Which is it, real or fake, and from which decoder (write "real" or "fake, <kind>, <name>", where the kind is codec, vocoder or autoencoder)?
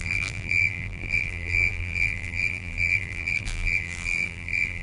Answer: fake, vocoder, BigVGAN v2